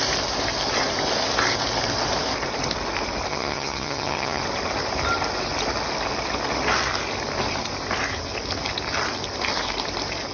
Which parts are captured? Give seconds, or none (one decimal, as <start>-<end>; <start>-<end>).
0.0-3.3; 4.4-10.3